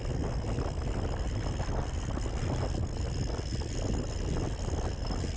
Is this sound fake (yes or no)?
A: no